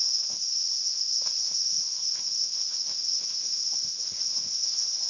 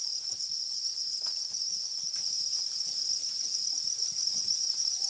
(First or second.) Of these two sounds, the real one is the second